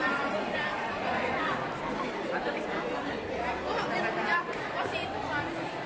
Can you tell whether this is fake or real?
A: fake